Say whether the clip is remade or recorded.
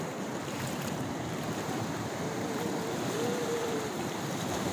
remade